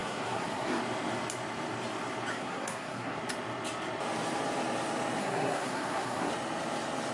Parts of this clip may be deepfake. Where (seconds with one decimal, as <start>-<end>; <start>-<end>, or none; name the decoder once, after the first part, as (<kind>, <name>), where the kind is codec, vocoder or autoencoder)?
0.0-0.8 (codec, SNAC); 2.3-3.2; 5.2-6.3